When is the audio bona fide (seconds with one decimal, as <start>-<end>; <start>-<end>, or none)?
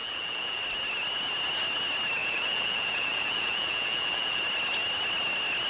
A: 0.6-2.2; 4.4-5.7